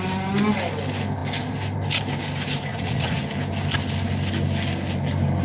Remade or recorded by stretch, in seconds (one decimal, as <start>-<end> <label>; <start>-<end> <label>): 0.0-2.7 recorded; 2.7-3.2 remade; 3.2-5.4 recorded